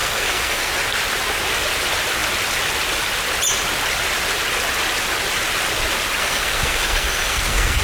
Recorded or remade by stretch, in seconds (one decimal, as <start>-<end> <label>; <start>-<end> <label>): 0.0-0.7 remade; 0.7-6.2 recorded; 6.2-7.8 remade